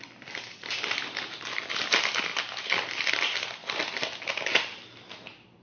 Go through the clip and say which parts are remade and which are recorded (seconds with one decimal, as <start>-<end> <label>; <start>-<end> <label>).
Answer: 0.0-5.6 recorded